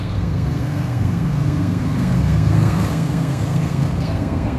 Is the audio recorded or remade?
remade